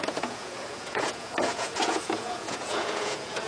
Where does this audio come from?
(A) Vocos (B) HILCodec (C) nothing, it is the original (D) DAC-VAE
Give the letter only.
A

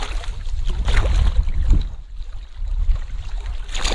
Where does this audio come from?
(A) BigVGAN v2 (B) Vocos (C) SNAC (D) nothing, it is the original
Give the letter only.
D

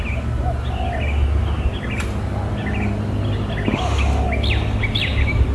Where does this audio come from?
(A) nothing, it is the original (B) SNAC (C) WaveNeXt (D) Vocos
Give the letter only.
A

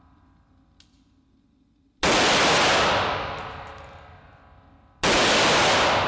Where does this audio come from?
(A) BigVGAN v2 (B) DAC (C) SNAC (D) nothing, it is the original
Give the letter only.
D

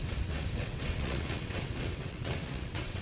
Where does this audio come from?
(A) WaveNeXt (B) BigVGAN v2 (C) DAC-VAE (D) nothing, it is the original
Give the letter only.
A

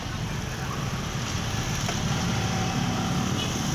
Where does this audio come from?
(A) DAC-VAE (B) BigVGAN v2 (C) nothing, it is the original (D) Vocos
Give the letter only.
C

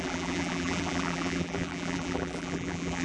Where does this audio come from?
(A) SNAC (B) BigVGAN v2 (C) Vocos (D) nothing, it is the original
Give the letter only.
B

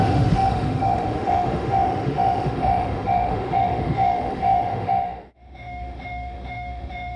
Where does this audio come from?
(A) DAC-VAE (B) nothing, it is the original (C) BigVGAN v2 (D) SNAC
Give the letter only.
A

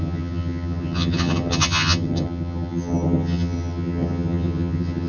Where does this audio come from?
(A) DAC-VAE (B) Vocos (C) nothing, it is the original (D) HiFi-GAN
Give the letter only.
D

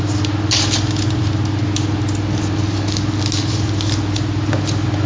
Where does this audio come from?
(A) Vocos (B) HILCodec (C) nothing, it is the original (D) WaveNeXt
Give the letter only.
C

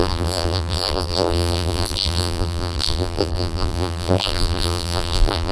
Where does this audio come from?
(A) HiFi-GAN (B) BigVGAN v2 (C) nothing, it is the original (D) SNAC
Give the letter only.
B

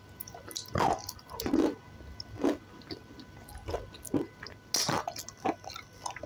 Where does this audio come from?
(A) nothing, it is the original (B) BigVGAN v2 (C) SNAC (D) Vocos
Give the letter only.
A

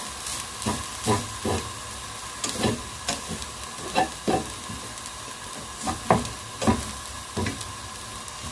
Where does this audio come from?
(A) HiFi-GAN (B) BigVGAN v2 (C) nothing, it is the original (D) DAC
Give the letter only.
C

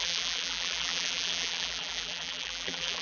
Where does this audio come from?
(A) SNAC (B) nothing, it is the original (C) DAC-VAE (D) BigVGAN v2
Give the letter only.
D